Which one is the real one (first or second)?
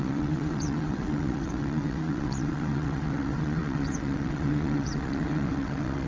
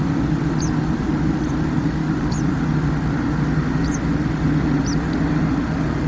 second